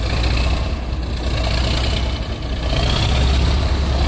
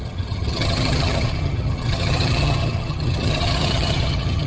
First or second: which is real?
first